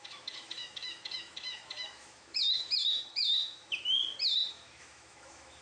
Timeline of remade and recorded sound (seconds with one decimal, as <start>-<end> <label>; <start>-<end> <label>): 0.0-4.0 remade; 4.0-4.5 recorded; 4.5-5.6 remade